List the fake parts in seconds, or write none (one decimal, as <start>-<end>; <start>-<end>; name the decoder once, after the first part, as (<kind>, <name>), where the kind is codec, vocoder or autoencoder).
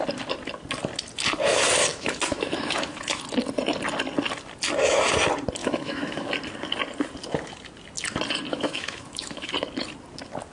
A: 1.9-3.2 (autoencoder, DAC-VAE); 5.6-6.3; 8.5-9.5